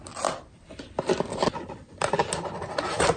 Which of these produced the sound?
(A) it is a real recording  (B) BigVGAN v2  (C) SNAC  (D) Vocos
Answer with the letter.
A